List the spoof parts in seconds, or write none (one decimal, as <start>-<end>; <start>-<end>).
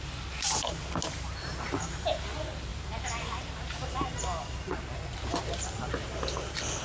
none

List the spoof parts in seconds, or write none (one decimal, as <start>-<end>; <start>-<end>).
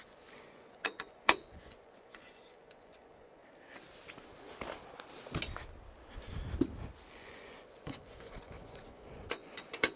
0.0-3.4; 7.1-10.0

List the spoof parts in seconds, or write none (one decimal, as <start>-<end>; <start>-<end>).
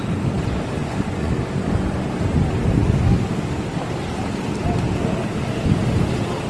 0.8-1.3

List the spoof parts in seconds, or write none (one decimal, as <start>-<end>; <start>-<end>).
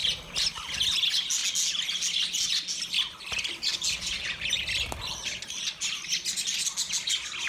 none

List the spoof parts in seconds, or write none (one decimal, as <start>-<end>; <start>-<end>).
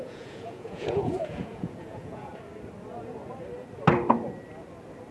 0.0-2.3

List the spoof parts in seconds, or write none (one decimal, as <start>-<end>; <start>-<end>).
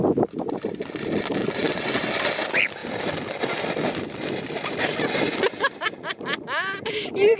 1.4-2.1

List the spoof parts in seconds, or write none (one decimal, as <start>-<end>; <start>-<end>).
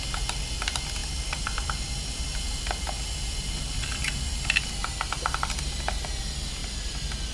none